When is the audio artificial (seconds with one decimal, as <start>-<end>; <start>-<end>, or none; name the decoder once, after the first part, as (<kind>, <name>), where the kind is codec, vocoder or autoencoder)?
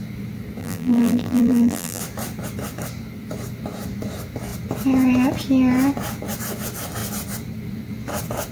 0.6-2.0 (vocoder, BigVGAN v2)